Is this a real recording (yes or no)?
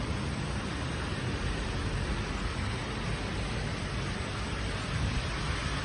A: yes